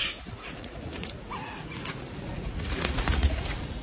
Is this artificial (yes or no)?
yes